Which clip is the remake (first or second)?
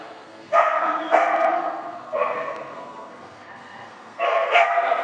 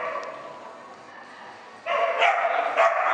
first